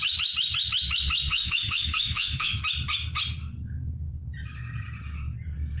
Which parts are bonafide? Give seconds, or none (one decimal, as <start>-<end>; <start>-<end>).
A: 0.0-1.3; 2.6-5.8